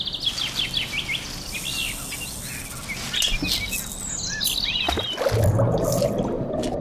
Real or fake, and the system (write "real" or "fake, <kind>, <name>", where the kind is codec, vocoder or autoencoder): real